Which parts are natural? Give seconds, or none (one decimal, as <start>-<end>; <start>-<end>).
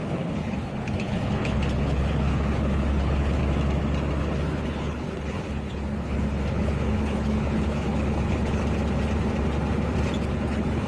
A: 3.4-4.2; 8.6-10.3